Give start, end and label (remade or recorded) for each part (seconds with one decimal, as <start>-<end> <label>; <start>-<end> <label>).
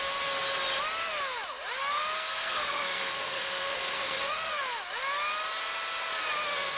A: 0.0-1.8 recorded; 1.8-4.6 remade; 4.6-6.8 recorded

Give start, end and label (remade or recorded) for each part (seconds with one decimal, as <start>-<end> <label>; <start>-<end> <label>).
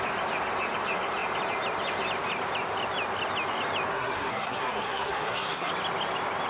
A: 0.0-3.9 recorded; 3.9-5.7 remade; 5.7-6.5 recorded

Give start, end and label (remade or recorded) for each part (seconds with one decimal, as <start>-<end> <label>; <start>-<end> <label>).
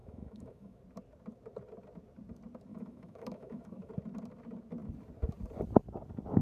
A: 0.0-0.8 remade; 0.8-2.7 recorded; 2.7-3.9 remade; 3.9-6.4 recorded